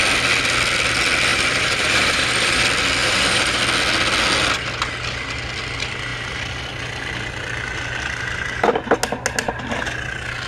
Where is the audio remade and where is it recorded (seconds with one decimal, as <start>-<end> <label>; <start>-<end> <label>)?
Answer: 0.0-1.3 recorded; 1.3-2.6 remade; 2.6-3.0 recorded; 3.0-3.6 remade; 3.6-10.5 recorded